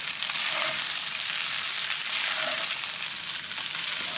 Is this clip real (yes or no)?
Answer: yes